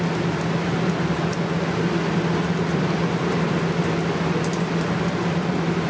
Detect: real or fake real